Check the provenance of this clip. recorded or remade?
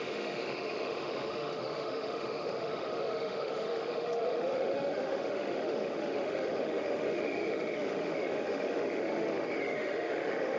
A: remade